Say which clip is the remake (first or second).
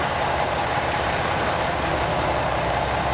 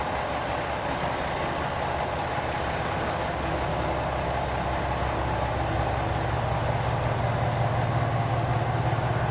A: first